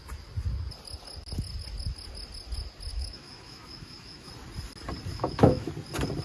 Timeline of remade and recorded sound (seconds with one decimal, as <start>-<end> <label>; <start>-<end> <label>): 0.0-2.9 recorded; 2.9-4.3 remade; 4.3-5.1 recorded; 5.1-5.7 remade; 5.7-6.2 recorded